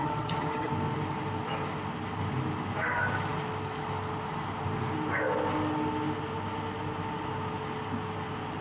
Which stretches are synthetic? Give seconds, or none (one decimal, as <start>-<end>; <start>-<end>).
0.0-0.7